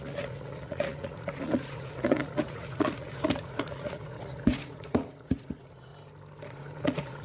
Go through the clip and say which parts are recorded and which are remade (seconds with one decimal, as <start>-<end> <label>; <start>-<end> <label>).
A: 0.0-5.9 remade; 5.9-6.5 recorded; 6.5-7.2 remade